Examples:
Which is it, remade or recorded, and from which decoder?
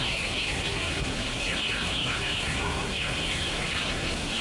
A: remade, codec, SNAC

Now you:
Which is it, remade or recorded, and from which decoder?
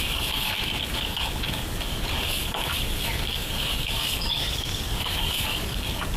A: remade, codec, DAC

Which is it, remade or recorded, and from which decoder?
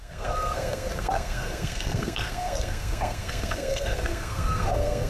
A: remade, codec, SNAC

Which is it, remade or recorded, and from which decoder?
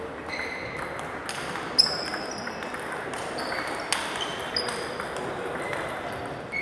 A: recorded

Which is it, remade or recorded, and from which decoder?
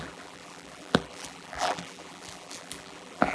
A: remade, vocoder, BigVGAN v2